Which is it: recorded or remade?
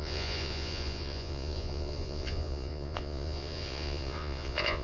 remade